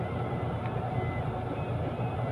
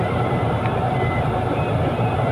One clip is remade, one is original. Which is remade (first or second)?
second